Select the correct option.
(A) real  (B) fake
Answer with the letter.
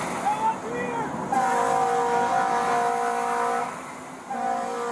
A